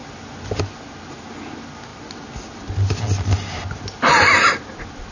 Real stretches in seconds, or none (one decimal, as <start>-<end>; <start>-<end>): 0.0-5.1